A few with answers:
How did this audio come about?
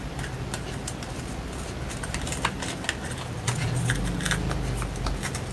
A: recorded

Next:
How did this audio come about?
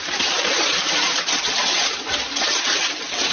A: remade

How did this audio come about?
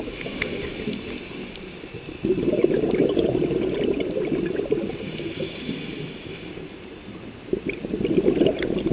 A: remade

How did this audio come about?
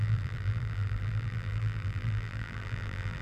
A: remade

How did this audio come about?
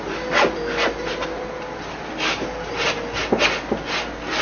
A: recorded